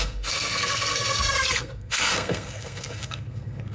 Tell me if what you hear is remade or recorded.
remade